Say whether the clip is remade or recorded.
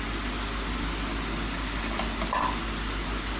recorded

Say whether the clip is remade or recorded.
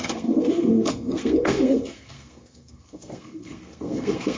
remade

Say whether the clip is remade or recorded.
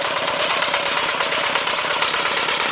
remade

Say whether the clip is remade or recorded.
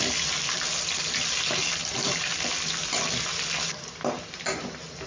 recorded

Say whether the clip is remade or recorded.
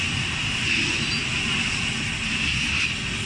recorded